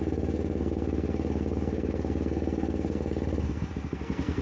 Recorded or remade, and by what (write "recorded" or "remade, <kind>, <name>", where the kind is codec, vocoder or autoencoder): remade, codec, SNAC